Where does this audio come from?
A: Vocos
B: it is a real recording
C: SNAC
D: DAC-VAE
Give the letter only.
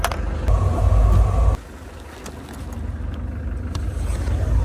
B